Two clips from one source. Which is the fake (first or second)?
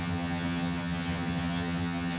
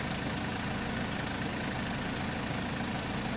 first